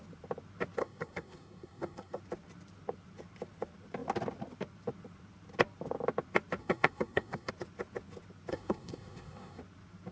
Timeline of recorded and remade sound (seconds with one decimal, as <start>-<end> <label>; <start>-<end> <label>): 0.0-0.8 recorded; 0.8-2.2 remade; 2.2-6.6 recorded; 6.6-7.5 remade; 7.5-8.5 recorded; 8.5-9.6 remade; 9.6-10.1 recorded